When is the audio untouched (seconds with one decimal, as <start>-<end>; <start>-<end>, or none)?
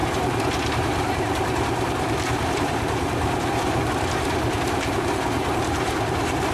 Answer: none